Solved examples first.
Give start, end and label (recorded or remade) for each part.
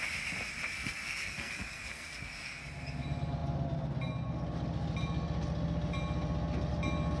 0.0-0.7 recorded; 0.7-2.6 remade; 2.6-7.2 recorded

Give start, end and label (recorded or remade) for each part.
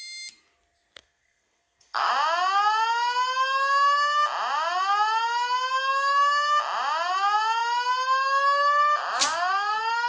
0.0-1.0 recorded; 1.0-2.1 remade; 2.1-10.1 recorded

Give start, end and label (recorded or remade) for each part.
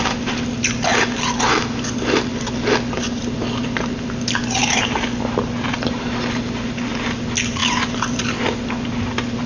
0.0-9.5 recorded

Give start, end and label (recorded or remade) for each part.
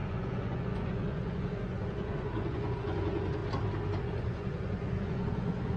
0.0-3.4 remade; 3.4-4.0 recorded; 4.0-5.8 remade